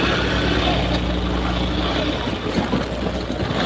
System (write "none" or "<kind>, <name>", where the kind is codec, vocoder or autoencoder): none